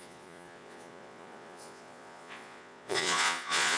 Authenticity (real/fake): fake